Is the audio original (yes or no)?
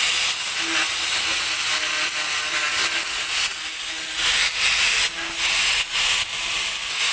yes